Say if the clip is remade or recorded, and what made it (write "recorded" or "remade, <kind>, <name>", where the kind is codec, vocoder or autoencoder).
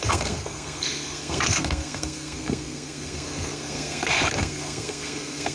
remade, codec, SNAC